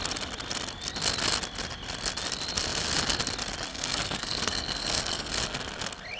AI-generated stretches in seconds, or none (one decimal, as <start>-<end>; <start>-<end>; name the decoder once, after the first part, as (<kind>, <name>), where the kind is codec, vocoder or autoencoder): 3.7-5.3 (codec, SNAC)